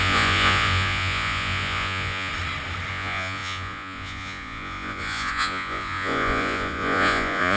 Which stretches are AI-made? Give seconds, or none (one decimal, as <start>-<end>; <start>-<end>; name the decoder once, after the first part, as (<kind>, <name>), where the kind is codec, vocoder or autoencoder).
0.0-2.3 (vocoder, Vocos); 2.9-7.6